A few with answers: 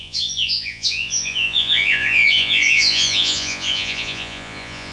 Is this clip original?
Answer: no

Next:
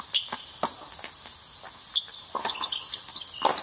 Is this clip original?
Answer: yes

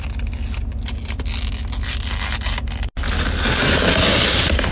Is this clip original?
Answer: yes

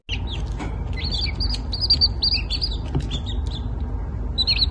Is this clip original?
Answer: yes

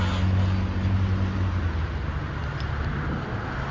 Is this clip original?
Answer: yes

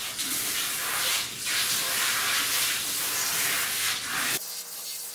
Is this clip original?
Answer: yes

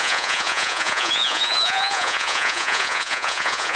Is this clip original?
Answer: no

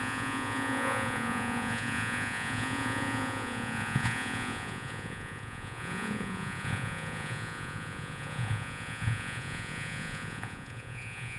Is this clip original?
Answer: no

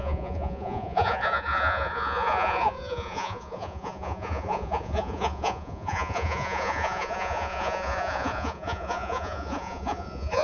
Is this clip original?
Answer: no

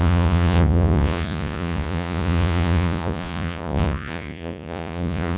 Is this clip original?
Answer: no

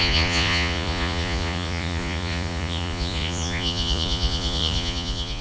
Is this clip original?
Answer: no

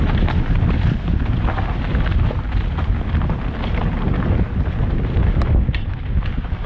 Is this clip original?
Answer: yes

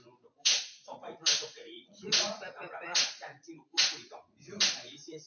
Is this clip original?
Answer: no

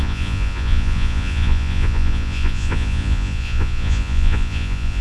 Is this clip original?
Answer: no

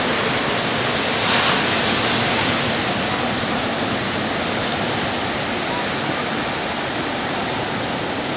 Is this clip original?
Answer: yes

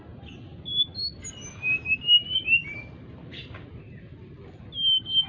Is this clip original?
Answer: yes